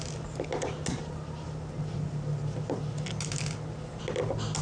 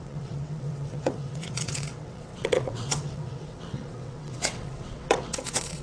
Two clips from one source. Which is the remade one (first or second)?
second